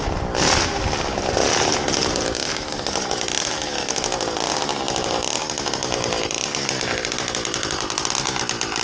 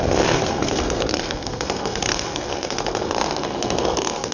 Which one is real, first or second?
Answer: first